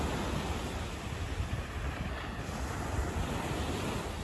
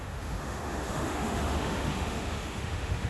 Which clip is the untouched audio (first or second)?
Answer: first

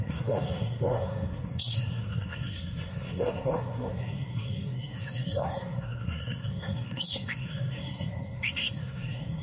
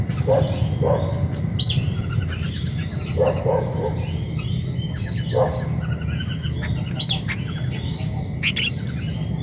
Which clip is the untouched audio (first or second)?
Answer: second